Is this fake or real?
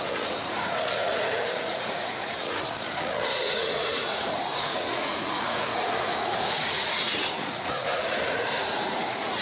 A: fake